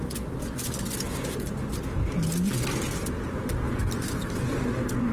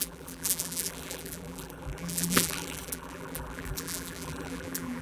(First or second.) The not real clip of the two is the second